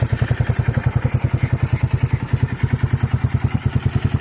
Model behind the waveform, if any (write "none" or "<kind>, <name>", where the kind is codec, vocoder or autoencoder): none